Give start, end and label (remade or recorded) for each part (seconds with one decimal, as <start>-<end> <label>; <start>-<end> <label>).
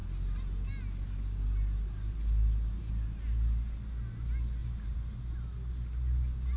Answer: 0.0-4.6 recorded; 4.6-5.2 remade; 5.2-6.6 recorded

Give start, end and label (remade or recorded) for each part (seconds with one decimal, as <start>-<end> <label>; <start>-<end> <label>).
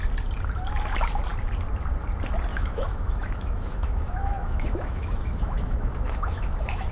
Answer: 0.0-2.5 recorded; 2.5-6.9 remade